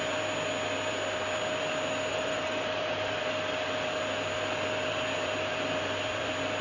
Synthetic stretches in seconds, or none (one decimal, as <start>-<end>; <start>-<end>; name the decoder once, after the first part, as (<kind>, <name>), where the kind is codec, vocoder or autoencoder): 2.1-3.2 (vocoder, BigVGAN v2)